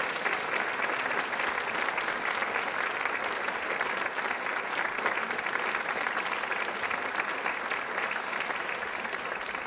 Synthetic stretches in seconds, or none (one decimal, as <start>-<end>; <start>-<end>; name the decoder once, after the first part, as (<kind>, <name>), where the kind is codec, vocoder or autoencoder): none